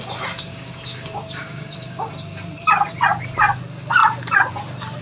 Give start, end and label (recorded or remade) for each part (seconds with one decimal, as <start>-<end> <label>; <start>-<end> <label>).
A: 0.0-0.5 recorded; 0.5-2.1 remade; 2.1-5.0 recorded

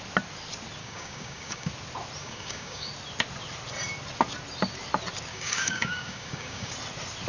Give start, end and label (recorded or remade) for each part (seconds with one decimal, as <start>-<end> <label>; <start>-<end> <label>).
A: 0.0-0.8 recorded; 0.8-1.7 remade; 1.7-2.2 recorded; 2.2-2.9 remade; 2.9-5.3 recorded; 5.3-6.7 remade; 6.7-7.3 recorded